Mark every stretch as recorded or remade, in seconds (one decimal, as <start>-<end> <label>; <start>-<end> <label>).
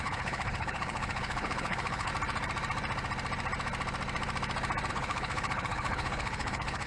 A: 0.0-2.1 remade; 2.1-4.9 recorded; 4.9-6.9 remade